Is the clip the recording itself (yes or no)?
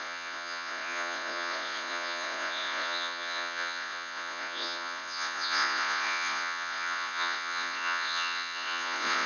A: no